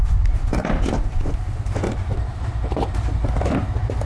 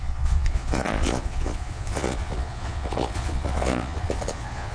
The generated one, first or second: second